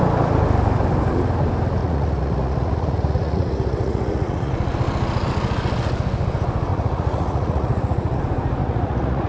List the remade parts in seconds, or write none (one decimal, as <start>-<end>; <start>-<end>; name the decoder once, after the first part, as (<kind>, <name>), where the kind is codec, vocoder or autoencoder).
1.8-4.5 (vocoder, Vocos); 6.7-8.2; 8.6-9.3